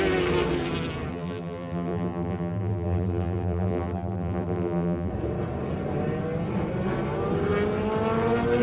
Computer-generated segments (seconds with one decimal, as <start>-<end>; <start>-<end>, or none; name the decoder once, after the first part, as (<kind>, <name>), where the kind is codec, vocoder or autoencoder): 1.1-5.1 (vocoder, BigVGAN v2)